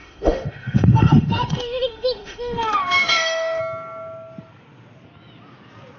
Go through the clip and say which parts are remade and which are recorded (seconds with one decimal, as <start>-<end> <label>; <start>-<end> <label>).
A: 0.0-3.6 remade; 3.6-6.0 recorded